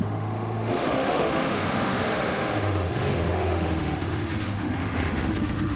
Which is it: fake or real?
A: fake